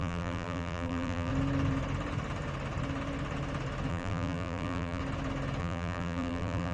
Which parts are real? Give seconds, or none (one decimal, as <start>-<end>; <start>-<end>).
1.3-3.9; 5.0-5.6

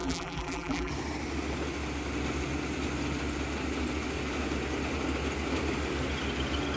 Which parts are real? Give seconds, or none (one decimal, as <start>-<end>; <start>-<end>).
0.9-6.8

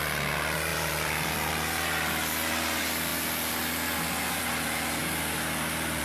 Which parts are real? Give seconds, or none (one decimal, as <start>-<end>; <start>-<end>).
0.0-0.7; 1.5-6.0

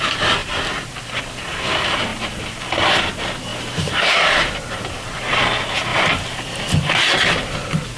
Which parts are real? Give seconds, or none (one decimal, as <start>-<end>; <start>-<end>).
0.0-0.4; 1.2-3.5; 5.2-8.0